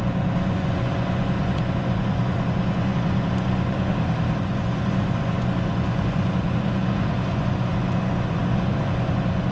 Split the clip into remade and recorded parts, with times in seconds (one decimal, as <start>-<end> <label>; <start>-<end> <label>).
0.0-3.9 remade; 3.9-4.4 recorded; 4.4-9.5 remade